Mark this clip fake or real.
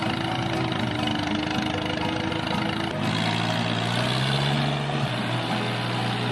real